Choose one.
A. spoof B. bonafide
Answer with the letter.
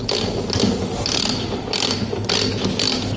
B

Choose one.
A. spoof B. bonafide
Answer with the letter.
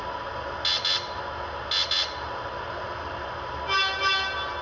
B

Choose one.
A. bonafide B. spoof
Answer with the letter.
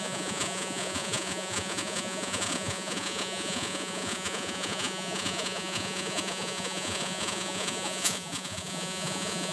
B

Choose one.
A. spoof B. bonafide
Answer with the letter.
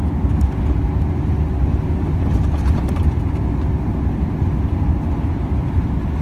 B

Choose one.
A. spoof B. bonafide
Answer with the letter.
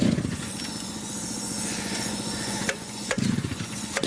A